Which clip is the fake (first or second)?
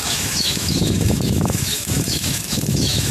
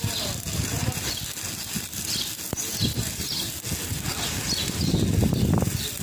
first